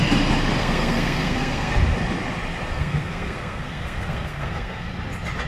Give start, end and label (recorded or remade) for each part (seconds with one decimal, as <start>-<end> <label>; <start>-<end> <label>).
0.0-0.6 recorded; 0.6-1.7 remade; 1.7-2.7 recorded; 2.7-4.9 remade; 4.9-5.5 recorded